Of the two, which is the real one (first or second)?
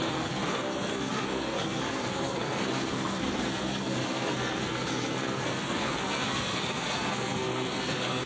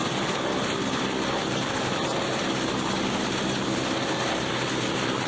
second